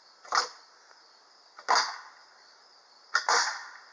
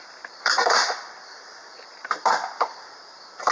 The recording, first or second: first